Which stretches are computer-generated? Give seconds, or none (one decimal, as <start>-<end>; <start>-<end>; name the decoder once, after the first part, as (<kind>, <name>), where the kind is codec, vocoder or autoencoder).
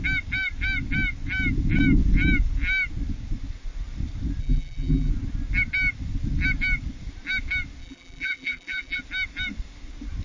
4.4-5.1 (vocoder, BigVGAN v2); 7.8-9.0